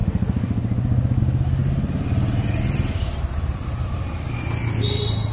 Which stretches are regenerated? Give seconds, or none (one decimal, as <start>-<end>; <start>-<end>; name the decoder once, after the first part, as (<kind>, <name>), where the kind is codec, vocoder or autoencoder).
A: none